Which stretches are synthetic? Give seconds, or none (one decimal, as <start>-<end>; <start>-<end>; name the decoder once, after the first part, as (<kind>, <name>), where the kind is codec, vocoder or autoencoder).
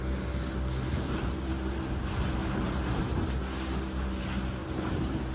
0.9-2.0 (vocoder, BigVGAN v2); 2.4-3.0; 4.6-5.3